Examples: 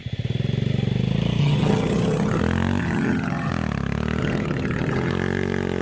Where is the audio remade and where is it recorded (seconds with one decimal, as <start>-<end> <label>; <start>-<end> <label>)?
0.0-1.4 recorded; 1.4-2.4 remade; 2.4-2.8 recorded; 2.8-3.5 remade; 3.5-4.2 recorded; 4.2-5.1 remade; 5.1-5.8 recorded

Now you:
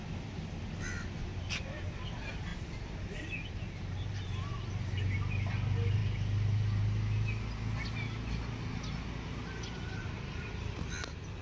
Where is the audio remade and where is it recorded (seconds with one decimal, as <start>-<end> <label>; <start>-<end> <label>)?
0.0-11.4 recorded

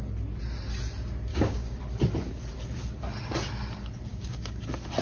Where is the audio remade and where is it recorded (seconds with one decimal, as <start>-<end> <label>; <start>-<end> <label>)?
0.0-1.3 recorded; 1.3-1.8 remade; 1.8-4.1 recorded; 4.1-4.6 remade; 4.6-5.0 recorded

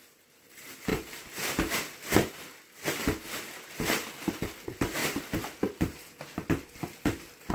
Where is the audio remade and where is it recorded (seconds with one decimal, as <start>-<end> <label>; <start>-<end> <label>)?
0.0-7.5 remade

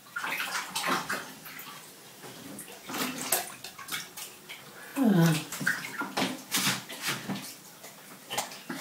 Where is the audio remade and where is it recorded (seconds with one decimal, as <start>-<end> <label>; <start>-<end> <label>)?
0.0-8.8 recorded

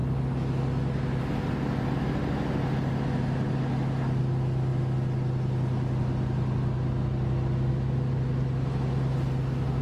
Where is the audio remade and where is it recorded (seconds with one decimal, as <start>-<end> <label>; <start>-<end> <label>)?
0.0-9.8 recorded